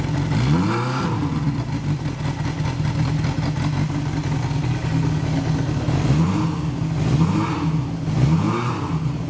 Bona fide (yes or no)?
yes